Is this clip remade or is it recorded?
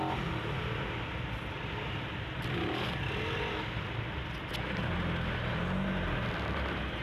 recorded